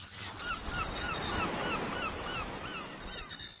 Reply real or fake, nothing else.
real